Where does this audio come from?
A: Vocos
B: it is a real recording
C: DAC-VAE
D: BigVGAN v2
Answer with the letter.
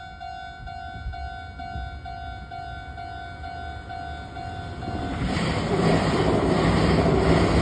B